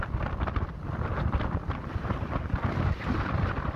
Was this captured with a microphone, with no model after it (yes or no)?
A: yes